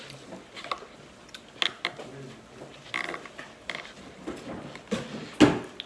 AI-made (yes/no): no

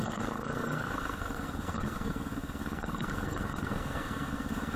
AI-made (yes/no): yes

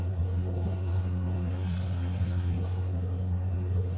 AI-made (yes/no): yes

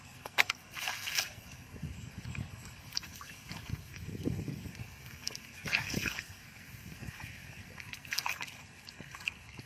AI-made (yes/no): yes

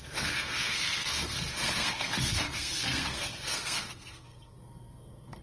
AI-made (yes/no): yes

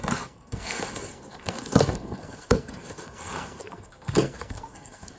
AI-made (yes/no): yes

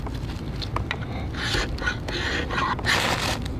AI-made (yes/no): no